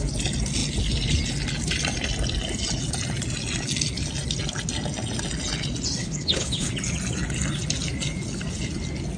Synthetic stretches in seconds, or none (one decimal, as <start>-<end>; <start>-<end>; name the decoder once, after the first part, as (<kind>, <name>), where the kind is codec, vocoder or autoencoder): 6.0-6.7 (codec, HILCodec)